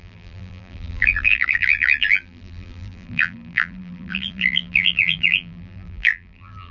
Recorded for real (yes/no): no